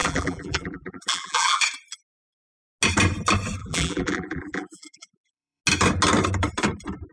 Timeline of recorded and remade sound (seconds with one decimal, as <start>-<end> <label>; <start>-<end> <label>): 0.0-1.6 remade; 1.6-3.6 recorded; 3.6-5.6 remade; 5.6-7.1 recorded